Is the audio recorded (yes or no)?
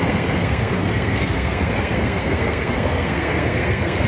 no